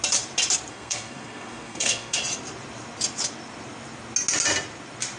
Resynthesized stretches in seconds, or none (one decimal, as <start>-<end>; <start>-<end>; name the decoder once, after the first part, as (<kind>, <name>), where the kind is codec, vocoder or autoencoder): 0.7-2.2 (codec, SNAC)

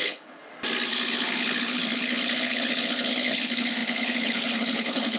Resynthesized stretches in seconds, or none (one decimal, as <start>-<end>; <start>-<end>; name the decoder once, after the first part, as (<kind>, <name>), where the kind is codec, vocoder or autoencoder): 0.0-0.4 (codec, HILCodec); 0.9-5.2

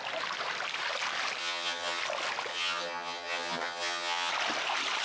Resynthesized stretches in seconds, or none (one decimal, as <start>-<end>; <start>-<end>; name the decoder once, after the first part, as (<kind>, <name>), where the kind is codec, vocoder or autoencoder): 1.4-2.0 (vocoder, HiFi-GAN); 2.5-4.3

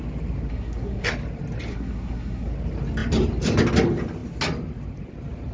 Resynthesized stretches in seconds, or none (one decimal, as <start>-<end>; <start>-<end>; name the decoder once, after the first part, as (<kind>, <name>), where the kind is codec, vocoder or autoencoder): 0.5-1.1 (codec, SNAC); 1.7-2.5

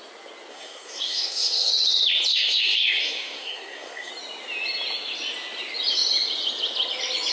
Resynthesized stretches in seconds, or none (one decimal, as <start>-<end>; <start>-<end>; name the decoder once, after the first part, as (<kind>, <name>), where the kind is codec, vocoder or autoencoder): 0.5-1.7 (codec, SNAC); 2.3-4.1